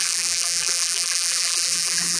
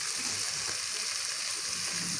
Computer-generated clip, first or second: first